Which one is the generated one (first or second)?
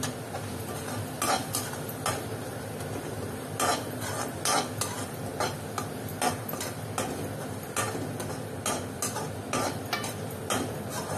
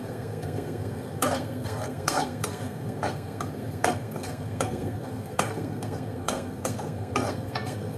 second